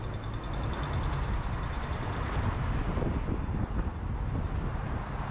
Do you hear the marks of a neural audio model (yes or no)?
no